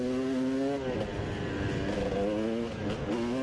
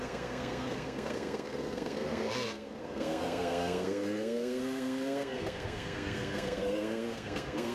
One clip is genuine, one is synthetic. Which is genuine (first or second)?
first